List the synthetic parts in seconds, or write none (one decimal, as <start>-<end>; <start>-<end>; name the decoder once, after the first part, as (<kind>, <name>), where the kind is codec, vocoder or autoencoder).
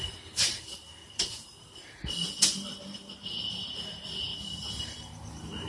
0.0-1.0 (vocoder, BigVGAN v2); 3.5-5.7